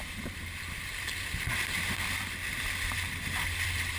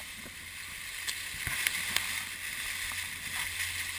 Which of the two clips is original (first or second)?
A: second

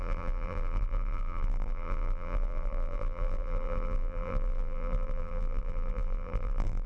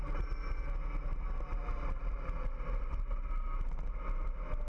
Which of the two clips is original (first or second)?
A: second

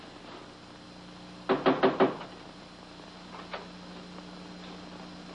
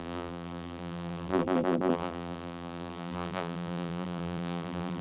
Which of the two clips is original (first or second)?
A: first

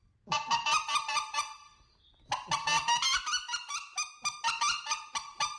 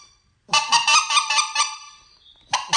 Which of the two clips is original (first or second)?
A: first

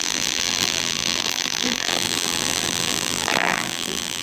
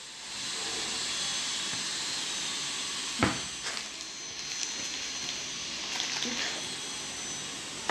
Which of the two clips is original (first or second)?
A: second